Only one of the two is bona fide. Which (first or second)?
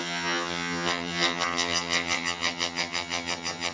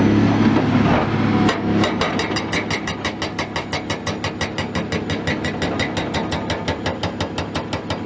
second